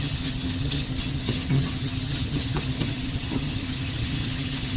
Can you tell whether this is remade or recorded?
remade